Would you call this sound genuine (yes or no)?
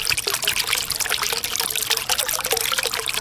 yes